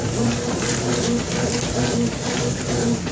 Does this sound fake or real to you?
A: real